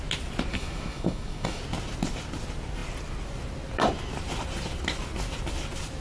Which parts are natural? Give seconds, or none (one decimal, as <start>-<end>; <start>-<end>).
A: 0.0-0.5; 1.6-6.0